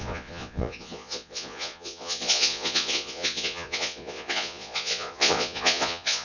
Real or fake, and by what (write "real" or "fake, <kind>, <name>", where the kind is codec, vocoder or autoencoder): fake, vocoder, Vocos